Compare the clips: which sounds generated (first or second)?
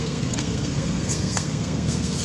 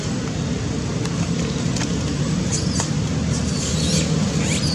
first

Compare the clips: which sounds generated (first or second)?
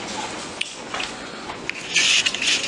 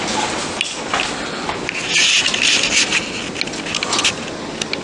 first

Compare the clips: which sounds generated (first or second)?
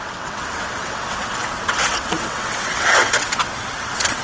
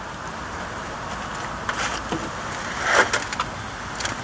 first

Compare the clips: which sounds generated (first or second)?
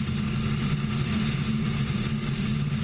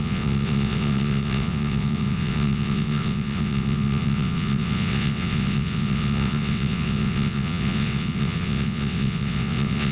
second